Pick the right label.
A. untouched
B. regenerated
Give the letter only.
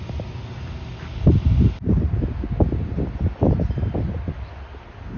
A